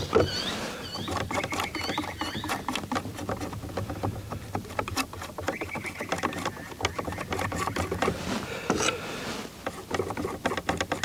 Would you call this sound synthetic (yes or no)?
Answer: no